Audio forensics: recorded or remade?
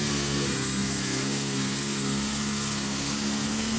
remade